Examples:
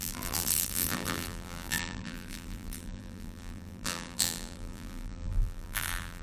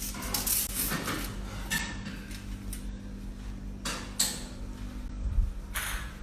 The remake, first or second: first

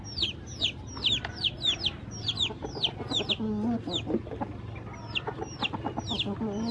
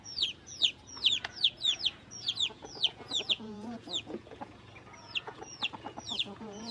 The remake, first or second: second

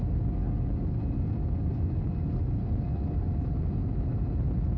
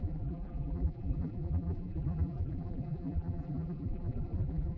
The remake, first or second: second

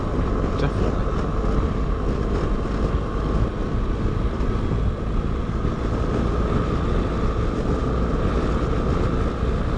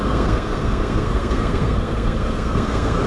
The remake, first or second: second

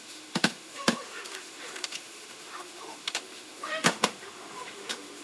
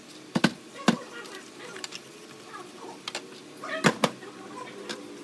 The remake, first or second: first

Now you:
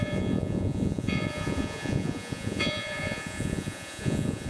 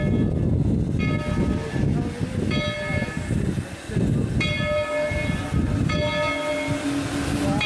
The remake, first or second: first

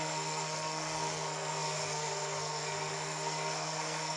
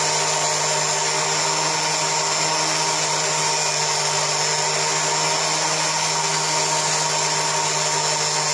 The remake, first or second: first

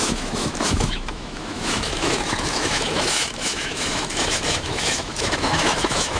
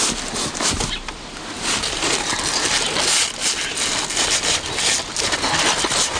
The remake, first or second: first